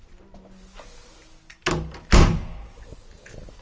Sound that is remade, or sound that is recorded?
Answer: recorded